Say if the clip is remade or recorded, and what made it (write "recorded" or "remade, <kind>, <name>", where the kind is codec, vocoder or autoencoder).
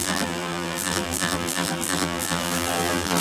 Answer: remade, vocoder, BigVGAN v2